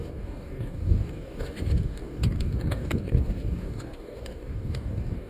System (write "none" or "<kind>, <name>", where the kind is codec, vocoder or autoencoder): codec, DAC